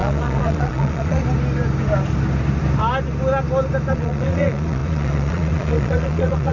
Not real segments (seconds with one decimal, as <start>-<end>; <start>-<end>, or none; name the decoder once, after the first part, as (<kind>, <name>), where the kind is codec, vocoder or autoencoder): 0.0-1.2 (vocoder, Vocos); 3.9-6.5